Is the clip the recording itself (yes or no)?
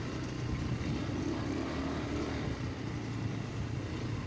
yes